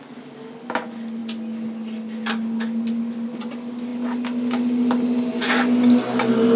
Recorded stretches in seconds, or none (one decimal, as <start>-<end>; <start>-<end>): 0.0-6.6